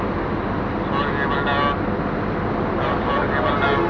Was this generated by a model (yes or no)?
no